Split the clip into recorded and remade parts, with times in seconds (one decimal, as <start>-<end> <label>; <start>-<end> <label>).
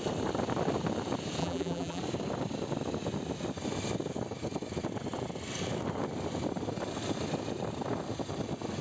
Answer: 0.0-1.4 recorded; 1.4-2.0 remade; 2.0-8.8 recorded